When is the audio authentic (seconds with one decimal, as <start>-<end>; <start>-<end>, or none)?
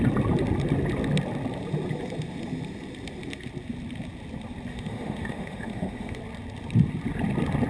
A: 0.0-4.7; 6.2-7.7